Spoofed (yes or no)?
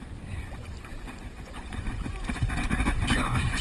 yes